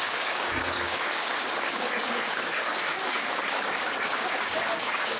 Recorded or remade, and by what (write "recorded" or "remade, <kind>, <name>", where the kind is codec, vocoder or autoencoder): remade, codec, DAC